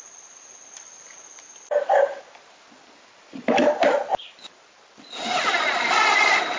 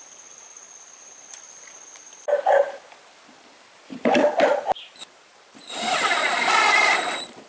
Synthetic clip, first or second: second